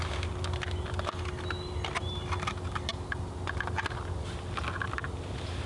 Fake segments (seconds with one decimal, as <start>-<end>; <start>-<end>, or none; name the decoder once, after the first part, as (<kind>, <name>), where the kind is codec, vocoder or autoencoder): none